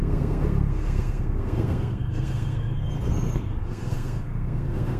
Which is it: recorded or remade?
remade